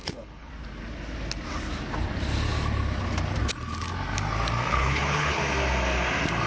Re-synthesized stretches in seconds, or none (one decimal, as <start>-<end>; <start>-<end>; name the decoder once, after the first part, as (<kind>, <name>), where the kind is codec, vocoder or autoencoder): 0.0-0.5 (codec, HILCodec); 4.7-5.4